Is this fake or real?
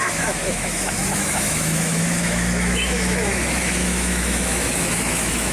fake